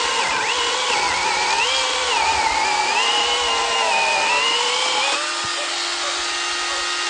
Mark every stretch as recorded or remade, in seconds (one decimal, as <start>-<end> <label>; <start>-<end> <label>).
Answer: 0.0-7.1 recorded

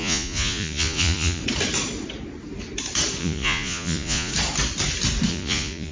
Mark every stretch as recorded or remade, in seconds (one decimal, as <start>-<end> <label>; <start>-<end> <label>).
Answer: 0.0-1.4 remade; 1.4-3.2 recorded; 3.2-4.3 remade; 4.3-5.3 recorded; 5.3-5.9 remade

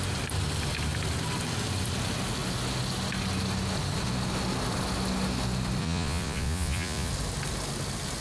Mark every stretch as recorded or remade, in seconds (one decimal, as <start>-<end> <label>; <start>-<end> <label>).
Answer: 0.0-5.8 recorded; 5.8-7.1 remade; 7.1-8.2 recorded

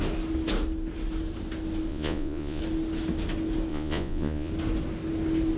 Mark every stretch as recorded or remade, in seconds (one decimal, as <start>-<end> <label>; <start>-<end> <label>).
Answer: 0.0-1.9 recorded; 1.9-2.6 remade; 2.6-3.7 recorded; 3.7-4.5 remade; 4.5-5.6 recorded

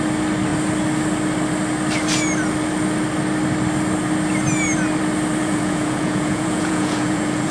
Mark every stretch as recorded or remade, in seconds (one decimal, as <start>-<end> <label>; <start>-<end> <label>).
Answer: 0.0-5.4 recorded; 5.4-7.5 remade

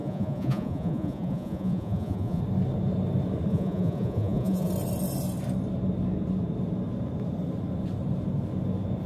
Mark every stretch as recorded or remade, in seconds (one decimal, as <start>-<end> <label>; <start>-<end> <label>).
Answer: 0.0-2.4 remade; 2.4-3.5 recorded; 3.5-4.7 remade; 4.7-9.1 recorded

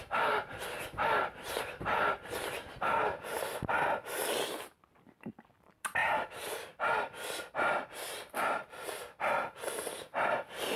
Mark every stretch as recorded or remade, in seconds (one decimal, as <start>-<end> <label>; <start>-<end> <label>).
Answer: 0.0-10.8 recorded

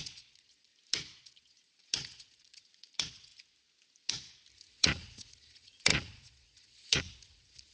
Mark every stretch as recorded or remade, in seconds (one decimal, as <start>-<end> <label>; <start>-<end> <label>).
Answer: 0.0-0.7 remade; 0.7-1.2 recorded; 1.2-3.3 remade; 3.3-4.7 recorded; 4.7-7.7 remade